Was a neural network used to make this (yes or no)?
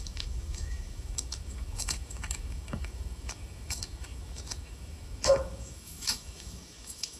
yes